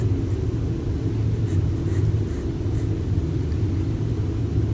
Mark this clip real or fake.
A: real